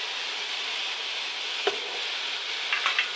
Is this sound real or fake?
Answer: real